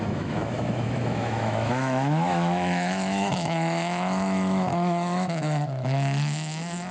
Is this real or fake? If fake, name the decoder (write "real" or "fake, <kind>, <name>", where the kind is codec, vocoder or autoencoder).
fake, autoencoder, DAC-VAE